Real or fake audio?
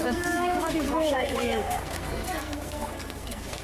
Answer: fake